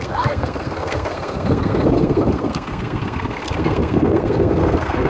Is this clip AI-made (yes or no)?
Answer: yes